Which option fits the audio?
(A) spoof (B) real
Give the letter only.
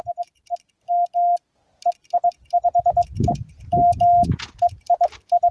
B